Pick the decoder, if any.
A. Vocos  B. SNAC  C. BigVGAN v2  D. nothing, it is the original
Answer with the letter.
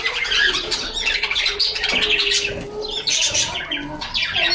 D